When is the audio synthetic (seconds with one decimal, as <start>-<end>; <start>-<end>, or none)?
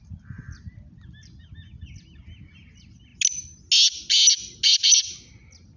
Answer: 4.7-5.3